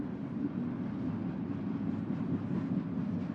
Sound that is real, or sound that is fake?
real